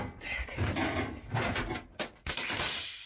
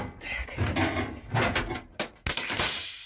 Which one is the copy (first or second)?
first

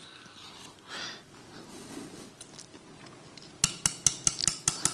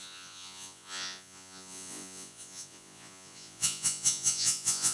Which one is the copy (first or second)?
second